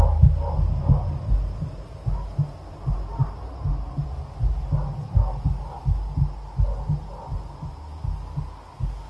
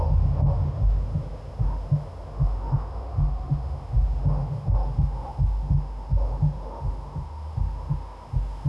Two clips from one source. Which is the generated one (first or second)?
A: second